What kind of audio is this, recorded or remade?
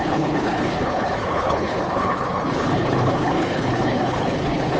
remade